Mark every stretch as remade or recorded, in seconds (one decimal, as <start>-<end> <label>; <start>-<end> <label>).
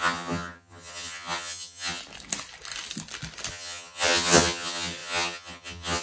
0.0-2.0 remade; 2.0-3.5 recorded; 3.5-6.0 remade